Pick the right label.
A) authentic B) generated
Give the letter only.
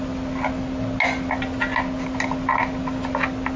A